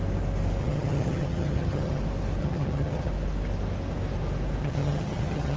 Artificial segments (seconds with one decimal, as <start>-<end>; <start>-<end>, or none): 0.6-2.0; 2.4-3.1; 4.6-5.6